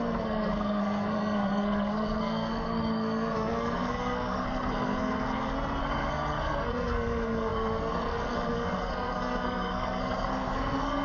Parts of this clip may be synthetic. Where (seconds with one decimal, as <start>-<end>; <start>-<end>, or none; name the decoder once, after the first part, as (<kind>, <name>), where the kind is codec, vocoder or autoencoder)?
0.0-11.0 (codec, SNAC)